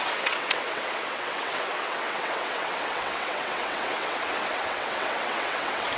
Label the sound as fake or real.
fake